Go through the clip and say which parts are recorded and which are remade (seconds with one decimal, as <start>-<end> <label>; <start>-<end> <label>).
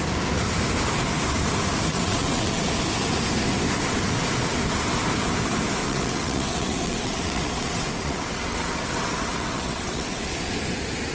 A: 0.0-1.9 recorded; 1.9-2.6 remade; 2.6-5.8 recorded; 5.8-10.3 remade; 10.3-11.1 recorded